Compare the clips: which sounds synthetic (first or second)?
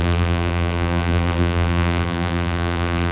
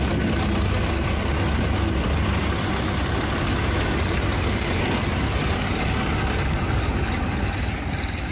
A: first